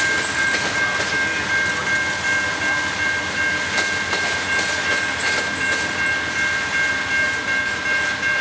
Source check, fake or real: real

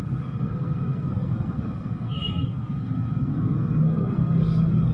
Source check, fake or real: fake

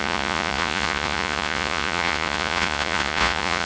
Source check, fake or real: fake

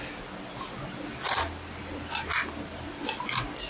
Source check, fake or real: real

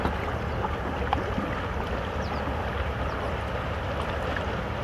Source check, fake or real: real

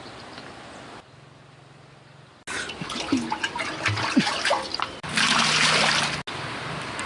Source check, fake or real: real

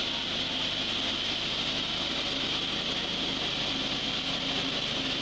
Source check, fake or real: real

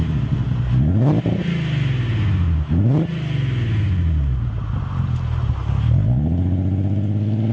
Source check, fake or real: real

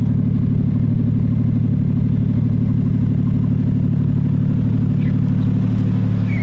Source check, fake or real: real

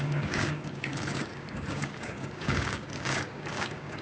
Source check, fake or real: fake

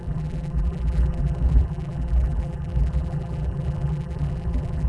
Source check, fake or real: fake